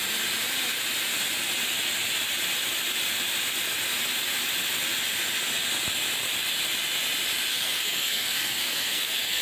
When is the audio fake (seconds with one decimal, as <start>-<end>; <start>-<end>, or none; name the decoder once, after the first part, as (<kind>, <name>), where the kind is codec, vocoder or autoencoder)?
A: 7.5-9.4 (codec, SNAC)